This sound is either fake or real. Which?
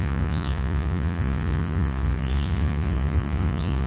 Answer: fake